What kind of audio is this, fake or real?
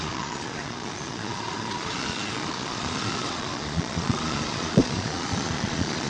fake